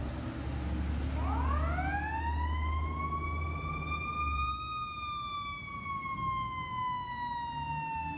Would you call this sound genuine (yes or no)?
yes